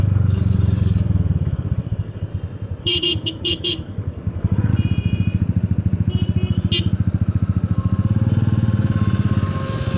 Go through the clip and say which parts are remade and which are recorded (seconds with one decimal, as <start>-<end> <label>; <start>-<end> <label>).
0.0-2.3 remade; 2.3-2.8 recorded; 2.8-4.7 remade; 4.7-10.0 recorded